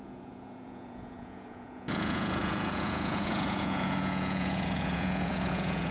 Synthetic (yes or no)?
yes